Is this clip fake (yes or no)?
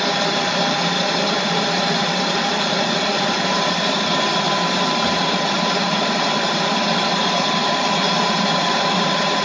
yes